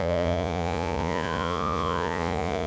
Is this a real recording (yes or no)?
no